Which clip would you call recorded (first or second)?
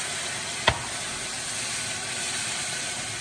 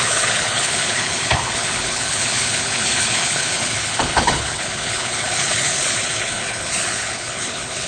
first